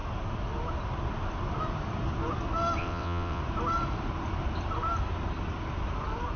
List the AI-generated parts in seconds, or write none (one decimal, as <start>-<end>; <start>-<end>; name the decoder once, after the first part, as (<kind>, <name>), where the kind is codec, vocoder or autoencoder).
2.8-3.4 (vocoder, WaveNeXt)